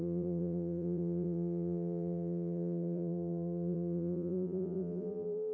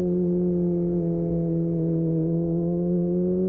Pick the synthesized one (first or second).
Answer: first